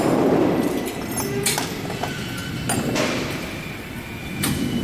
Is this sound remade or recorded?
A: recorded